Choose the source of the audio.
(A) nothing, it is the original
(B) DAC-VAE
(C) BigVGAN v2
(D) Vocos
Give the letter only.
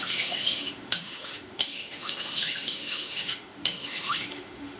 B